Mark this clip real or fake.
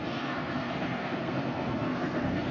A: fake